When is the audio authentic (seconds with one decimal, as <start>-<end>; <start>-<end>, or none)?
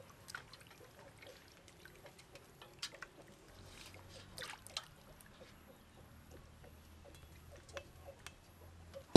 0.0-9.2